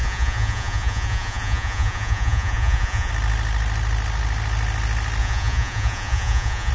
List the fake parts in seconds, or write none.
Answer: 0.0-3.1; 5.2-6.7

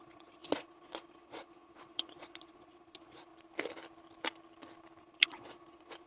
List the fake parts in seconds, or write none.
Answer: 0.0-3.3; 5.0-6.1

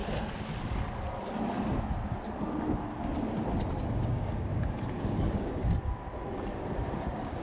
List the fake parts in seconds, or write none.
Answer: 4.0-4.5; 5.0-5.6; 7.0-7.4